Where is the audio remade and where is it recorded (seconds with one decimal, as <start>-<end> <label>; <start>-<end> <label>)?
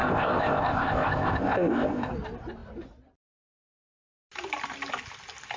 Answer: 0.0-2.1 remade; 2.1-5.6 recorded